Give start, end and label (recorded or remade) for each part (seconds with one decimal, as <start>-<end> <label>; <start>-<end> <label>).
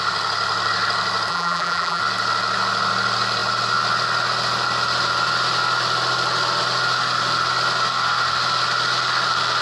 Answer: 0.0-1.3 recorded; 1.3-2.0 remade; 2.0-9.6 recorded